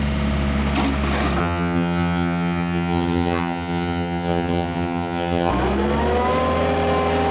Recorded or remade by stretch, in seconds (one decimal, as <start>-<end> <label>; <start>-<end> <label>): 0.0-1.4 recorded; 1.4-5.5 remade; 5.5-7.3 recorded